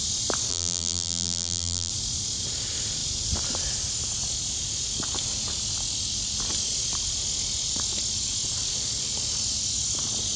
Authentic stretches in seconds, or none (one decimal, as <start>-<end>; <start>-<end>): 0.0-0.5; 1.9-10.4